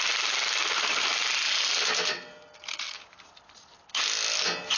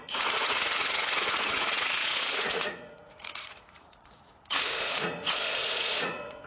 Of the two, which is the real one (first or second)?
first